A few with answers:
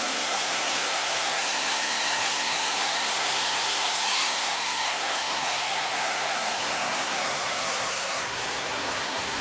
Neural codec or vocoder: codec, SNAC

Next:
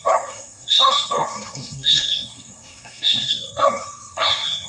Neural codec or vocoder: codec, SNAC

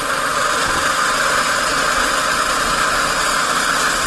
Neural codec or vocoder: none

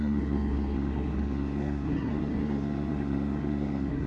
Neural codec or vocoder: codec, SNAC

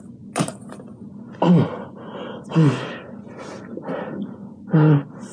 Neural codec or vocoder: none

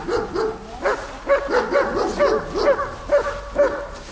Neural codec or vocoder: none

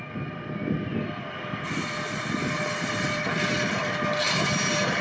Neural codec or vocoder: none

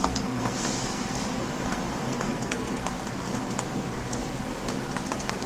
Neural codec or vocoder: codec, SNAC